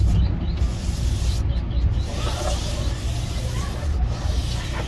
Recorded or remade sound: recorded